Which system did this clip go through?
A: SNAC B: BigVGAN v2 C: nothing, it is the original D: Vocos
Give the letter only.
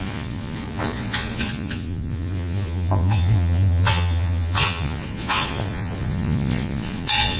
D